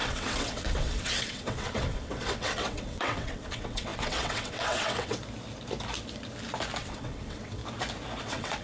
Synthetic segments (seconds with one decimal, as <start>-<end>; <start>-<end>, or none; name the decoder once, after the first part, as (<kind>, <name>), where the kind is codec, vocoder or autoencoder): 0.0-5.2 (vocoder, WaveNeXt); 6.8-7.6; 8.2-8.6